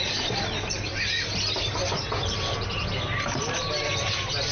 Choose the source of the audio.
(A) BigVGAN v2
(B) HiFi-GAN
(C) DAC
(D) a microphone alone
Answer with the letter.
A